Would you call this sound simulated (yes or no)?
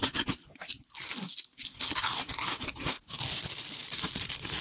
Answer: no